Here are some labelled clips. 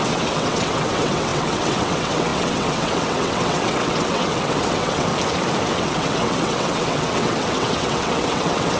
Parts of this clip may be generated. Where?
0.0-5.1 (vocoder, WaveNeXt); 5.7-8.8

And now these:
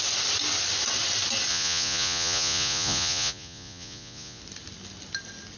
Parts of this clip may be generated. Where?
1.5-4.4 (vocoder, Vocos)

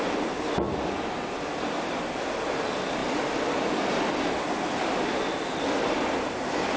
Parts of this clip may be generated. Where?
none

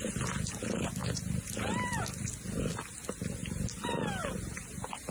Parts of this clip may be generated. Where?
none

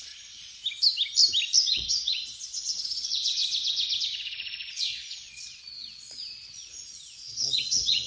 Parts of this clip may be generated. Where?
0.0-0.6 (vocoder, Vocos); 1.6-3.4; 4.0-8.1

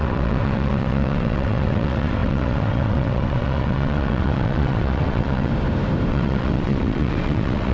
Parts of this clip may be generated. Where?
0.0-5.5 (vocoder, WaveNeXt); 6.1-7.7

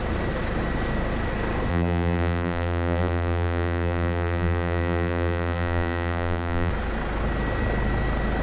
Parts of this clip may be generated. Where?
1.7-6.7 (vocoder, BigVGAN v2)

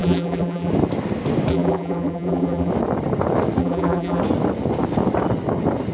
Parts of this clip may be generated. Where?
0.0-0.7 (vocoder, BigVGAN v2); 1.5-2.7; 3.6-4.2